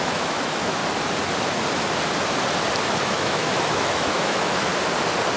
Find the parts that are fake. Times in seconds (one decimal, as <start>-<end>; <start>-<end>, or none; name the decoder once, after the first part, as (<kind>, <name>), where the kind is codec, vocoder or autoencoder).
0.0-0.8 (autoencoder, DAC-VAE); 3.0-4.7